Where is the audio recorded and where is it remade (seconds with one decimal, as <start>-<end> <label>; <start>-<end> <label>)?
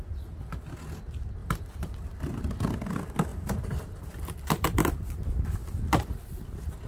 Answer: 0.0-1.4 recorded; 1.4-2.4 remade; 2.4-3.3 recorded; 3.3-5.1 remade; 5.1-6.9 recorded